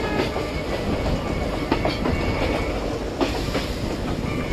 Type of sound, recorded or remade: recorded